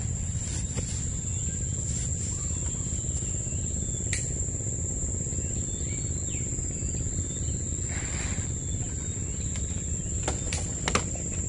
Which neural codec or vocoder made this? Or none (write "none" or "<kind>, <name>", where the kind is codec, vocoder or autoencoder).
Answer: none